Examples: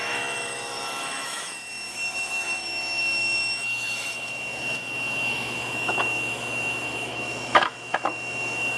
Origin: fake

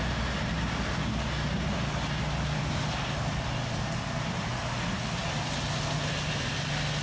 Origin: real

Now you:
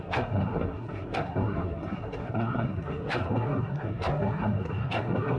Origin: fake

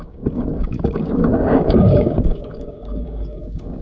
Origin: fake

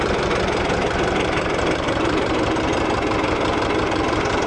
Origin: real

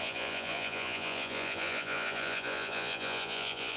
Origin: fake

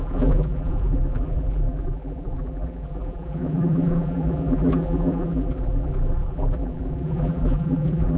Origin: fake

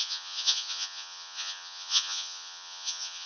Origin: fake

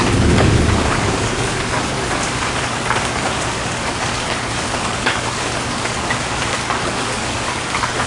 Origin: fake